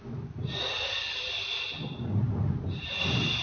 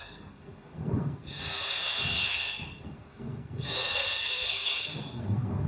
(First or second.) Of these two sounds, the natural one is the first